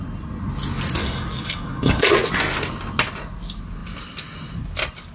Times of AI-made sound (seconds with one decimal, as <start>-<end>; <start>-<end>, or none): 1.0-2.1

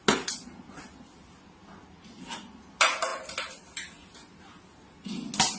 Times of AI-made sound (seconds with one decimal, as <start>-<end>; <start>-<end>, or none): none

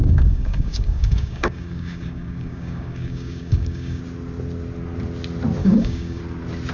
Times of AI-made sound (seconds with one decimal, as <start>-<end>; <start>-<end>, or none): 0.0-4.0; 5.6-6.2

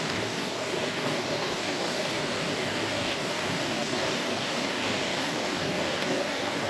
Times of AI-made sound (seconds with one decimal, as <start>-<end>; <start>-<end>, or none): 0.0-6.7

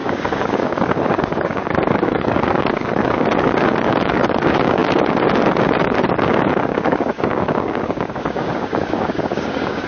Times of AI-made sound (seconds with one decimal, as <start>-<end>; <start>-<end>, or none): 0.0-9.9

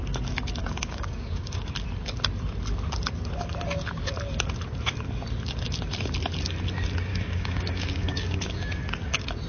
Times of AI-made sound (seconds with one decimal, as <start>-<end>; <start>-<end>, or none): 0.6-1.7; 7.1-8.8

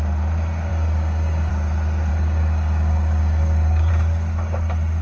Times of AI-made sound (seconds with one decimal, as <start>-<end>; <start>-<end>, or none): 0.7-1.5; 2.1-3.9

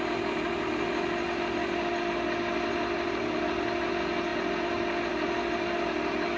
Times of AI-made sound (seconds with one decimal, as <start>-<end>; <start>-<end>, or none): none